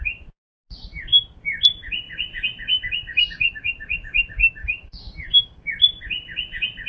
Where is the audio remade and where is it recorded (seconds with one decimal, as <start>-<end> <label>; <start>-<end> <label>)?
0.0-4.6 recorded; 4.6-5.7 remade; 5.7-6.9 recorded